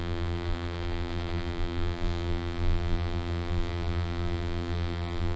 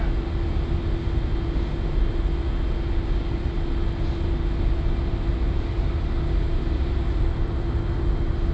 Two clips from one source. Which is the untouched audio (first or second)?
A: second